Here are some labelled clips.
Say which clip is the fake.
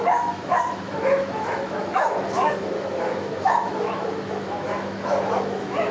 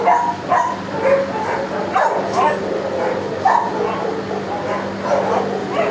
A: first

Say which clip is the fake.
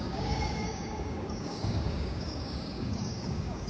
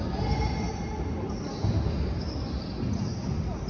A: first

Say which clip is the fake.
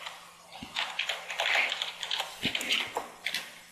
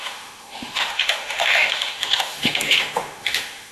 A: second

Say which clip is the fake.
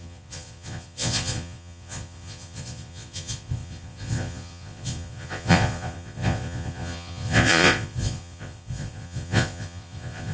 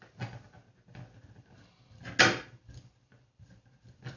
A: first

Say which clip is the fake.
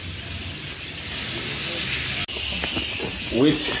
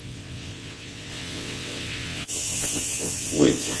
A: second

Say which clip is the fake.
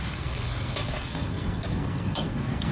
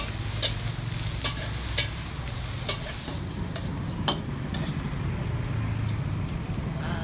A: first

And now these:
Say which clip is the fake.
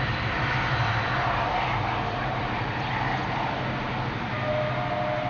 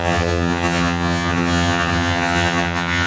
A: second